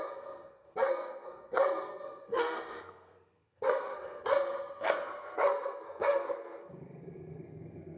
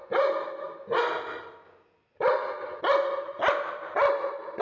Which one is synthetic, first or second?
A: first